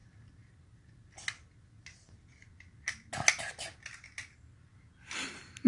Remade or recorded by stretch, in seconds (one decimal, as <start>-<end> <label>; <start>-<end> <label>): 0.0-5.7 recorded